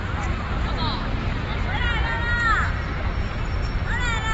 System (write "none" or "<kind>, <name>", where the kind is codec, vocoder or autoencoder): none